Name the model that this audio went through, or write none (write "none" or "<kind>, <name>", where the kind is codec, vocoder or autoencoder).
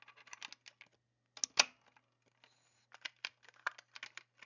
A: none